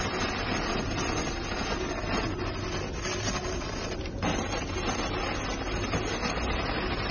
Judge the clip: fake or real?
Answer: real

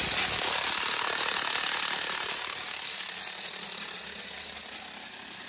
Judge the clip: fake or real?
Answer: real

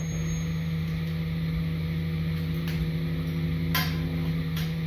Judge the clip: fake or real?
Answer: real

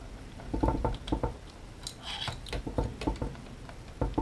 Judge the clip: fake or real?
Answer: real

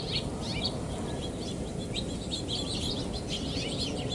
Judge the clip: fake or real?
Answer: real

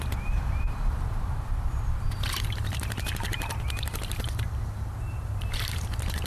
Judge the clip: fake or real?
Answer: fake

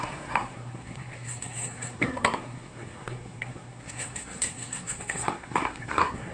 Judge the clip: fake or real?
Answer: fake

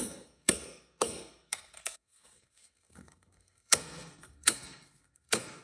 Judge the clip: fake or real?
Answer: fake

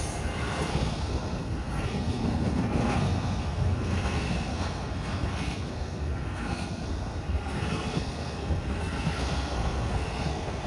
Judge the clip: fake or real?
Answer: fake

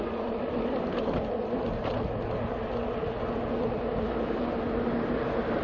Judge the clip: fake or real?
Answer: real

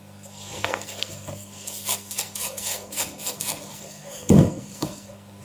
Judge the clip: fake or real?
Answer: fake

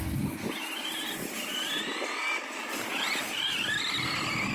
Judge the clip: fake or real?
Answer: real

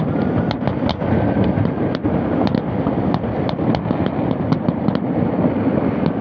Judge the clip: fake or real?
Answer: real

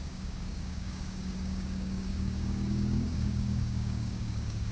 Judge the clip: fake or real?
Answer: fake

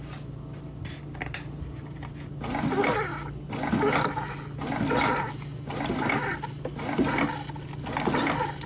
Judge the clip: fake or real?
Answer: real